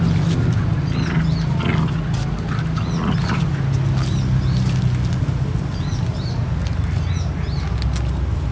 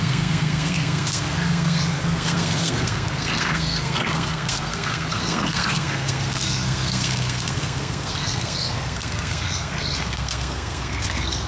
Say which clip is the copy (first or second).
second